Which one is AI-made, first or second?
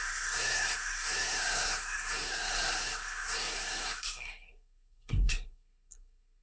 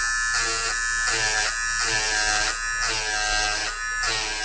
first